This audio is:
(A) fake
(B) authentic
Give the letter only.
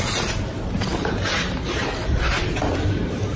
A